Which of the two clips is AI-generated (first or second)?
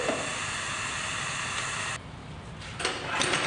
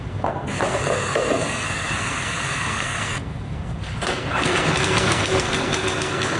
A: second